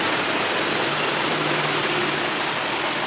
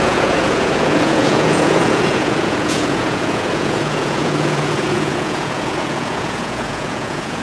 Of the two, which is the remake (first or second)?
second